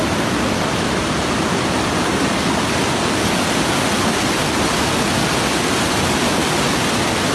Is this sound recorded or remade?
recorded